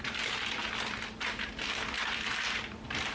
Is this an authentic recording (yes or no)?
yes